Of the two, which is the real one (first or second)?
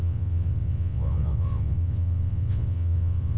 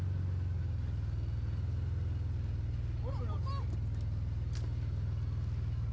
second